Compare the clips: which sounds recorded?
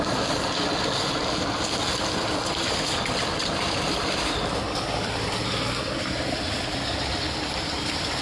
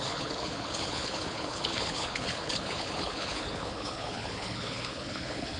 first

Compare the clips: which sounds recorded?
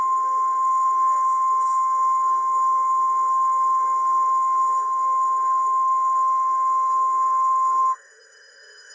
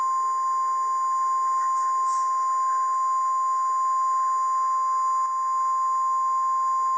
second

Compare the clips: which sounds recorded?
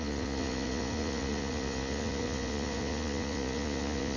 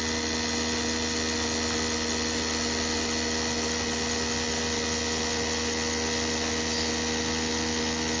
second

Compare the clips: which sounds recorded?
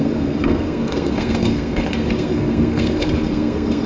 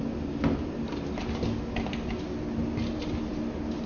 second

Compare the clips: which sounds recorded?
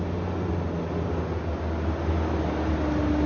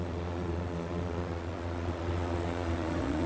first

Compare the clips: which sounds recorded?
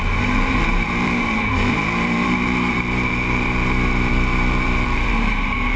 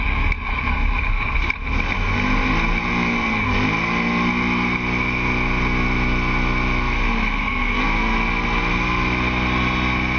second